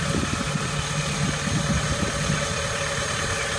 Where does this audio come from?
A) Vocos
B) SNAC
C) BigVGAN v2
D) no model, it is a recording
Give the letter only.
D